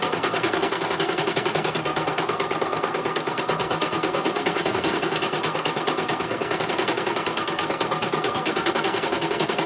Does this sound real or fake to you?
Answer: fake